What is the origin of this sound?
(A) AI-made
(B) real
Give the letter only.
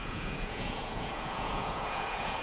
A